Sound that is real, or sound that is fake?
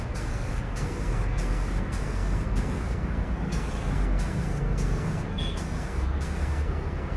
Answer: fake